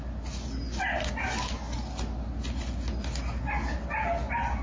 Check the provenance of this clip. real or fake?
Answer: real